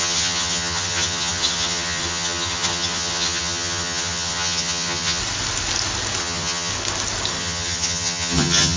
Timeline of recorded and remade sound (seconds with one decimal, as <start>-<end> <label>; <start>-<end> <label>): 0.0-5.2 remade; 5.2-6.2 recorded; 6.2-6.7 remade; 6.7-7.3 recorded; 7.3-8.8 remade